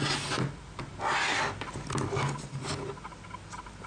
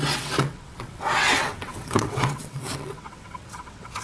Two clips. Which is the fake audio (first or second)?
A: second